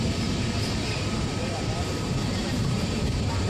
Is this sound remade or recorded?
remade